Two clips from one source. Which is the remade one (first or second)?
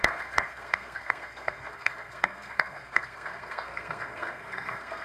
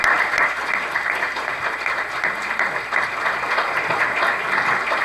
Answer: first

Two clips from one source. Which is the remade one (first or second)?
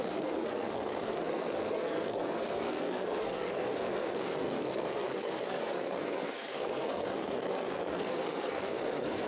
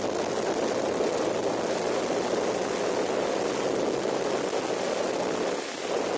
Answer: first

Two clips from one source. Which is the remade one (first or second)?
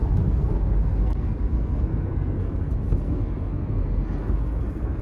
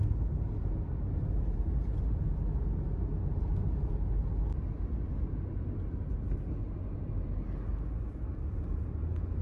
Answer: first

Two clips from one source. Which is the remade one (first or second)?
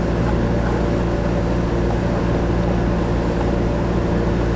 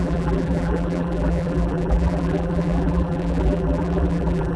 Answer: second